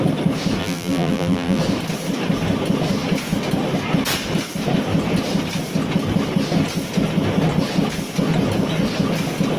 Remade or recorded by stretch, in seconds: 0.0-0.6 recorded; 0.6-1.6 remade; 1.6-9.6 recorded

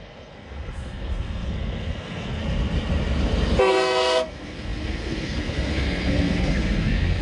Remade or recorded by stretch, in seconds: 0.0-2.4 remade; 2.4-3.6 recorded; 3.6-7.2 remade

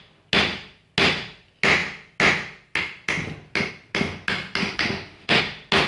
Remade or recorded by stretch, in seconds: 0.0-4.6 recorded; 4.6-5.4 remade; 5.4-5.9 recorded

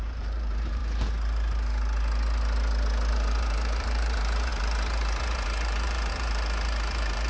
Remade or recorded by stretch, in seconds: 0.0-0.8 remade; 0.8-3.1 recorded; 3.1-7.3 remade